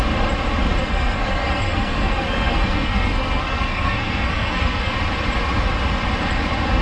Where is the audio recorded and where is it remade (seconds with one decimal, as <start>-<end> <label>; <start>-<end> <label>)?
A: 0.0-0.8 recorded; 0.8-4.9 remade; 4.9-6.8 recorded